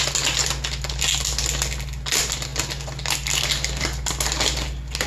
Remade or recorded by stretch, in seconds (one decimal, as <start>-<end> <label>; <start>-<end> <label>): 0.0-5.1 recorded